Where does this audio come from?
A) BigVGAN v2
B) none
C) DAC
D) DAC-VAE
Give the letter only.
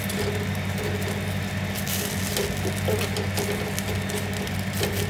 B